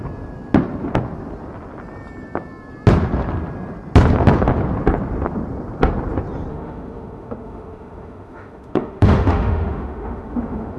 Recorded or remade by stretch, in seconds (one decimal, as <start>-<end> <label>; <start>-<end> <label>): 0.0-6.5 recorded; 6.5-10.8 remade